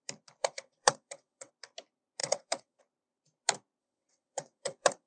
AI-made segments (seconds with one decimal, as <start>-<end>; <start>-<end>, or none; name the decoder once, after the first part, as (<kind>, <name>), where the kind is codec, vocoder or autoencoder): 0.4-1.5 (vocoder, WaveNeXt); 2.2-2.8; 3.8-5.1